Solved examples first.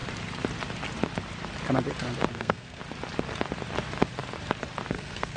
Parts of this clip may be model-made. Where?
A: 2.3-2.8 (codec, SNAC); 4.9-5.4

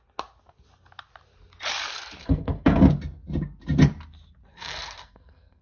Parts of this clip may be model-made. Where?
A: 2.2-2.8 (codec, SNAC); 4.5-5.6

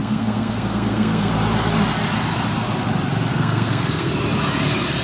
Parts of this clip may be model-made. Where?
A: 0.0-1.3 (codec, SNAC); 3.3-4.1

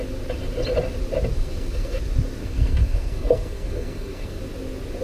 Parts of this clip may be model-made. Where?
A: 1.4-2.0 (codec, SNAC); 2.4-4.4

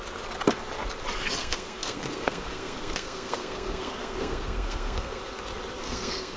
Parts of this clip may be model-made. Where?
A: 1.4-5.2 (codec, SNAC); 5.8-6.4